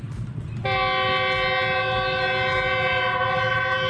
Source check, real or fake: real